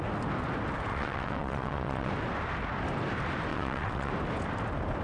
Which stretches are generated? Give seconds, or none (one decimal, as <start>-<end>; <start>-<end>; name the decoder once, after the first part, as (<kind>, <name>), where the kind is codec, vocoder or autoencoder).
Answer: 0.9-2.1 (vocoder, WaveNeXt); 3.5-4.1